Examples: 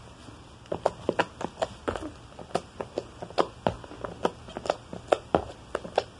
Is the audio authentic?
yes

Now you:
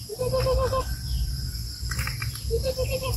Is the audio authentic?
yes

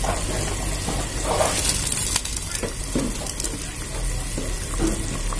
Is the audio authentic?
yes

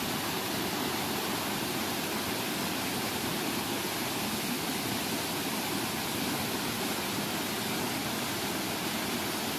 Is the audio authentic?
yes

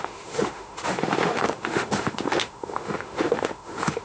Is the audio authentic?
no